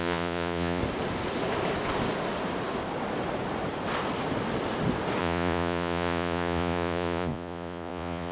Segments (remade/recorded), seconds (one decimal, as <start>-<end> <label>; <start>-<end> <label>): 0.0-0.8 remade; 0.8-5.2 recorded; 5.2-8.3 remade